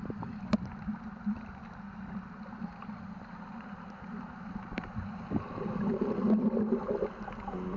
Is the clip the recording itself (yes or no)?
yes